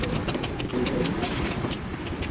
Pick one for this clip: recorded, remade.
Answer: recorded